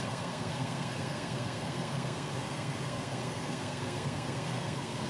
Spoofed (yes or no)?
yes